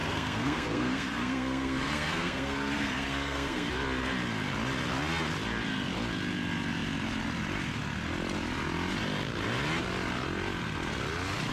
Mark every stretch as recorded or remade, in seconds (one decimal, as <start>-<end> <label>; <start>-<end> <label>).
0.0-3.7 remade; 3.7-11.5 recorded